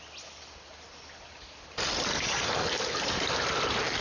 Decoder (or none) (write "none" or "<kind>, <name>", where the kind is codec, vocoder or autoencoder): none